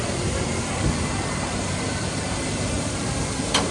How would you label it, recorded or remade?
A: remade